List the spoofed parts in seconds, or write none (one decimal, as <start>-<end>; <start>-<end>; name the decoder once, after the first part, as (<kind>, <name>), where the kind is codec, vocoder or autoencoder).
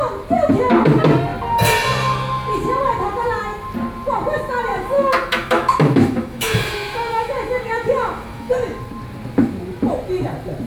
4.7-8.5 (autoencoder, DAC-VAE)